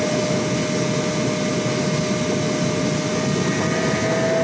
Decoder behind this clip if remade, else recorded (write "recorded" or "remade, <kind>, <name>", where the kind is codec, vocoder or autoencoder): recorded